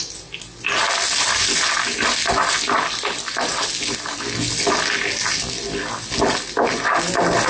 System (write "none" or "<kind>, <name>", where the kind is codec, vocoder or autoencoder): none